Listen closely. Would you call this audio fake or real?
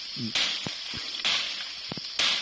real